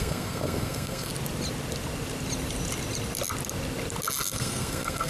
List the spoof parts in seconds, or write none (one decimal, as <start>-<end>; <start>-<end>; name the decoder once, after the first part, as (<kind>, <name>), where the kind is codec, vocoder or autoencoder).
0.0-1.1 (codec, SNAC); 4.2-5.1